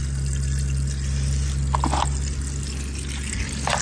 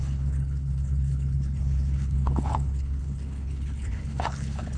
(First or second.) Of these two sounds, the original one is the first